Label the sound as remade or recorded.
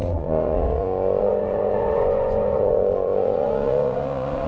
remade